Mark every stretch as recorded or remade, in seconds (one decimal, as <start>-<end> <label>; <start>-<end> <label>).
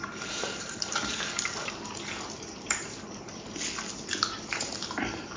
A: 0.0-1.6 remade; 1.6-4.8 recorded; 4.8-5.4 remade